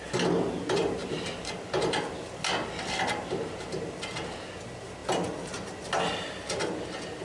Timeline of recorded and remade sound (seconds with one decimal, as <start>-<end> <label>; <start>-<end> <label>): 0.0-7.2 recorded